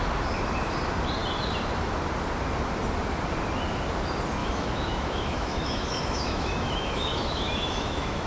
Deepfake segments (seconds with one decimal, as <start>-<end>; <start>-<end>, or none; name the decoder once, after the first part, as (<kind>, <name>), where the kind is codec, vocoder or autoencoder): 4.4-8.3 (autoencoder, DAC-VAE)